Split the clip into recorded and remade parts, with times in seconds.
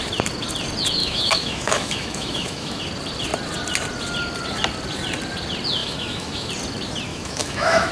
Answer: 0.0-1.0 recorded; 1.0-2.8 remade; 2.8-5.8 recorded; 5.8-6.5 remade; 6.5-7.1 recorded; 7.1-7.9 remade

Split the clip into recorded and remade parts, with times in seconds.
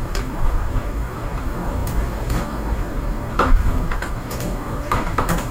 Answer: 0.0-5.5 remade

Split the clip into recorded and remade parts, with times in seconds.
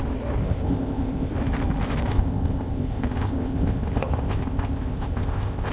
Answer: 0.0-0.4 recorded; 0.4-1.3 remade; 1.3-2.1 recorded; 2.1-5.7 remade